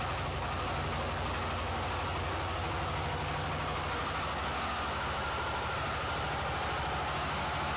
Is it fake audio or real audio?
real